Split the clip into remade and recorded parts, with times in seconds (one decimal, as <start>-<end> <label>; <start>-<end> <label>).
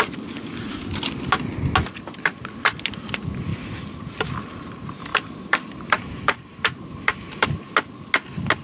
0.0-3.5 recorded; 3.5-4.1 remade; 4.1-5.1 recorded; 5.1-7.4 remade; 7.4-8.6 recorded